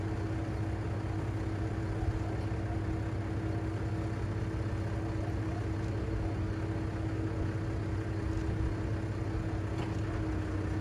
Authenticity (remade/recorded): recorded